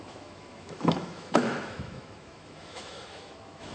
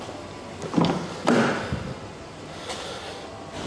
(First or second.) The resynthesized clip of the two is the first